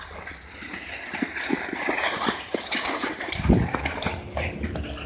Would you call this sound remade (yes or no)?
no